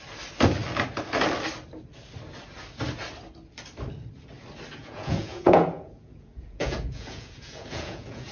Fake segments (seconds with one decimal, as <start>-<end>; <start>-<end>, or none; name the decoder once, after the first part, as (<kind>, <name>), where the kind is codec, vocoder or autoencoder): 4.8-8.3 (vocoder, Vocos)